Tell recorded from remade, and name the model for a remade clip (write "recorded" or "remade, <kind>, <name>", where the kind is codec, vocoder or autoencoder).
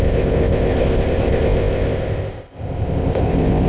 remade, codec, ZipCodec